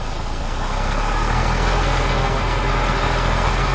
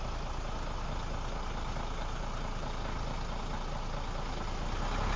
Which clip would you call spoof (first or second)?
first